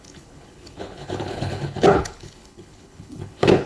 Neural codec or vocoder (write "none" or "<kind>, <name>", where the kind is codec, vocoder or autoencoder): codec, HILCodec